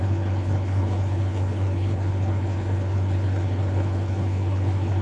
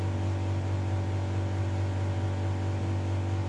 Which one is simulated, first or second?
first